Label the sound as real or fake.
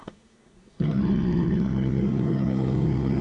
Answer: fake